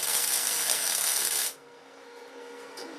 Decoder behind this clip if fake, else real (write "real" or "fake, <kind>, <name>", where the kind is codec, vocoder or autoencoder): fake, codec, SNAC